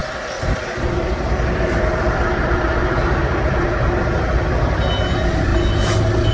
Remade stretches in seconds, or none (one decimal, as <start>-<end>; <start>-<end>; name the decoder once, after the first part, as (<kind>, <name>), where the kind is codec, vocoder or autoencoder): none